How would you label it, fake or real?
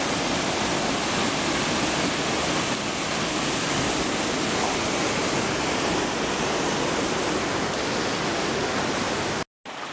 real